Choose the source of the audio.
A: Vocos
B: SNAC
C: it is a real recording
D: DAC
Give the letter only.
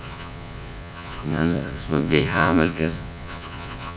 A